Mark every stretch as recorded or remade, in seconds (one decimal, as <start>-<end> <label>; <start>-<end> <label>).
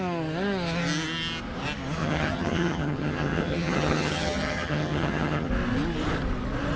0.0-2.0 recorded; 2.0-5.5 remade; 5.5-6.8 recorded